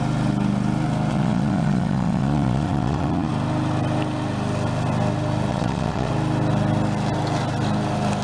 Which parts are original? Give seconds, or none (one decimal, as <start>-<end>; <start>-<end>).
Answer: 0.0-1.1; 3.3-5.5; 6.1-8.2

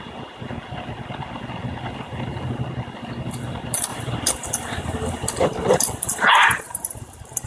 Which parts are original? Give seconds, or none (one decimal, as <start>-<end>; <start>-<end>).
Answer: 0.0-3.9; 6.3-7.5

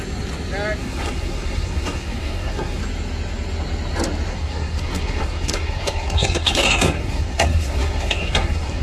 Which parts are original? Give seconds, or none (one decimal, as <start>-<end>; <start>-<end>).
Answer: 0.0-0.8; 2.8-4.3

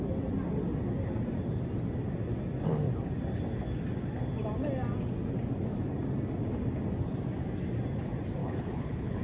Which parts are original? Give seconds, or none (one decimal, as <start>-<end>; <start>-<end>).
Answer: 0.0-8.4

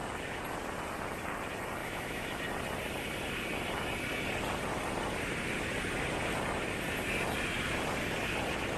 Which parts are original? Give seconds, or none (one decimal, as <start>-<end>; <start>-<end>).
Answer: 0.0-1.8; 2.4-8.8

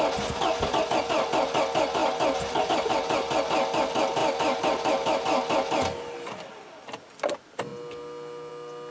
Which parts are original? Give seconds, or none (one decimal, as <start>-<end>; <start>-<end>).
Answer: 0.0-8.9

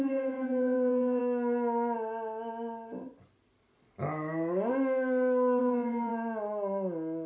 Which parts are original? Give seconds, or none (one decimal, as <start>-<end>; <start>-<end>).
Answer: 1.2-5.6; 6.1-7.3